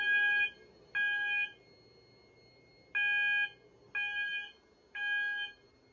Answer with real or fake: real